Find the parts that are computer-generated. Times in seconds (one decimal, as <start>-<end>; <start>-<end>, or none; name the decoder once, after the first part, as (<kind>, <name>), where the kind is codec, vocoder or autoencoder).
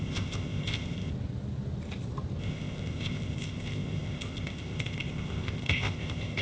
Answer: 0.0-1.1 (codec, ZipCodec); 2.4-6.4